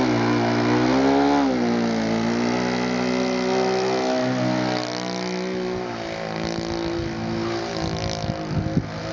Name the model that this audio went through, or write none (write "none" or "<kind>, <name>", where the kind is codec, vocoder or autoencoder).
none